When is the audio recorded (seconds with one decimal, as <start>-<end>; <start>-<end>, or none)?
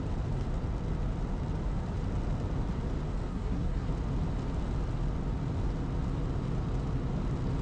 0.0-3.3; 3.9-7.6